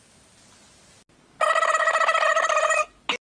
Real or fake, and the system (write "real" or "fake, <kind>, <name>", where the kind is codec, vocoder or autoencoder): real